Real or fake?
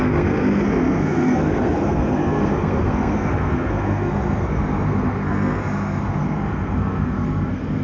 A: fake